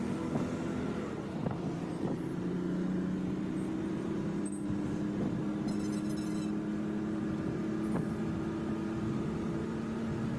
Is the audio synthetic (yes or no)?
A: no